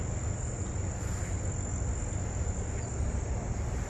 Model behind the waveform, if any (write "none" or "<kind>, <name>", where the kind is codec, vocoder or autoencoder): none